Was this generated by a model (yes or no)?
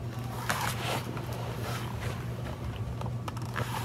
no